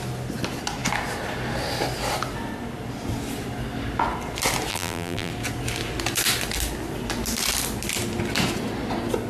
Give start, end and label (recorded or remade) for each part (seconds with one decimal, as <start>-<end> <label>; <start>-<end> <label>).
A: 0.0-4.7 recorded; 4.7-5.3 remade; 5.3-9.3 recorded